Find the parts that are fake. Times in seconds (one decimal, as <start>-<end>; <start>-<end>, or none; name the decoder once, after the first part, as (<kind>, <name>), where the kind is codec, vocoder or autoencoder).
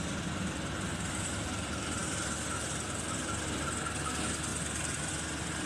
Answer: none